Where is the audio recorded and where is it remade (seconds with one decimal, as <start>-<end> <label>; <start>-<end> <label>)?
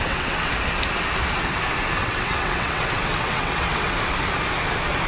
0.0-0.5 remade; 0.5-2.0 recorded; 2.0-3.9 remade; 3.9-5.1 recorded